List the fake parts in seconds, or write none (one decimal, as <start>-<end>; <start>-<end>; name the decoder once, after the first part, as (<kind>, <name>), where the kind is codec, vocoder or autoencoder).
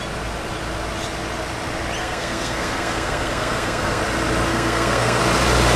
2.0-4.0 (codec, SNAC); 4.5-5.2